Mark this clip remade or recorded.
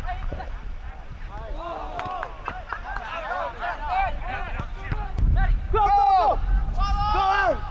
recorded